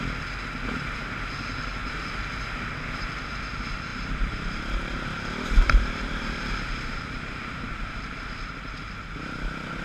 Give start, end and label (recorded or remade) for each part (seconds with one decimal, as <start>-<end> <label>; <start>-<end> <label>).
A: 0.0-1.8 recorded; 1.8-2.3 remade; 2.3-3.9 recorded; 3.9-7.7 remade; 7.7-9.8 recorded